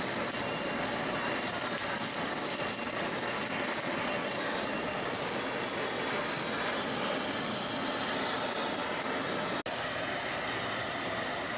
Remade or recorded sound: recorded